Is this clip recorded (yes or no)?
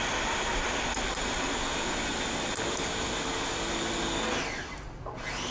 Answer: yes